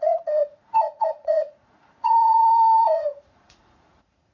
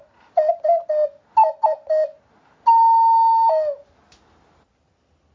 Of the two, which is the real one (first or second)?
second